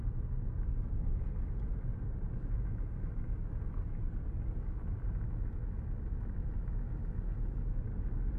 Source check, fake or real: real